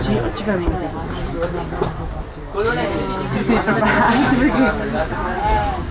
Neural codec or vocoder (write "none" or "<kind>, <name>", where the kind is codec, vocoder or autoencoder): none